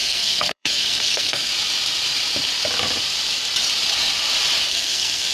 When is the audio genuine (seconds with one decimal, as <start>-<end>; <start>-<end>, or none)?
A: 1.5-4.7